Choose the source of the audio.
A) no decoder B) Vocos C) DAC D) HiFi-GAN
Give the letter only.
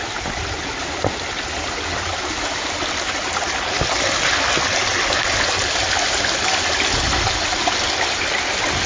A